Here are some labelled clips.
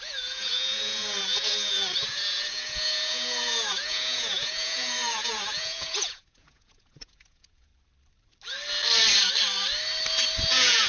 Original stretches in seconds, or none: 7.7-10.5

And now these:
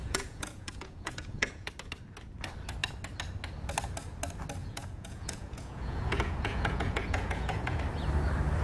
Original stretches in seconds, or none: 1.7-4.6; 7.8-8.6

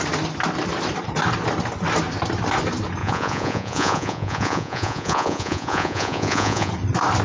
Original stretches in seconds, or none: 0.0-3.0; 6.7-7.2

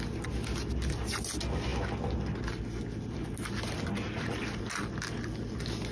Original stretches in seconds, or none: 0.0-5.9

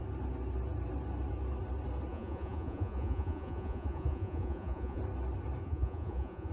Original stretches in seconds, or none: 0.0-2.1; 5.0-5.6

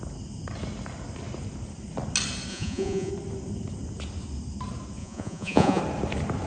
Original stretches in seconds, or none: 0.0-2.5; 3.1-5.0; 5.8-6.5

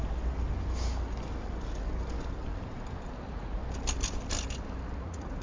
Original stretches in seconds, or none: 0.0-3.2; 3.6-5.0

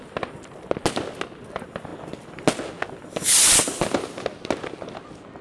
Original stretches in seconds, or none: 0.0-5.4